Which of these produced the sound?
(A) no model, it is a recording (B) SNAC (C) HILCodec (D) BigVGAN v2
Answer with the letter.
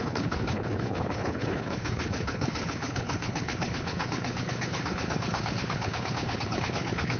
C